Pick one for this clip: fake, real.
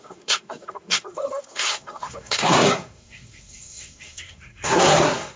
fake